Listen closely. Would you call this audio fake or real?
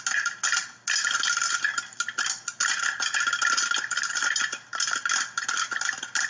real